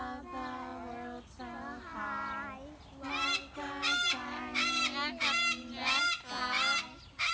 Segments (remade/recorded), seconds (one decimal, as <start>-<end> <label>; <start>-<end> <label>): 0.0-7.3 recorded